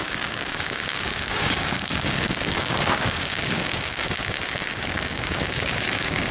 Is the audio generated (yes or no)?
yes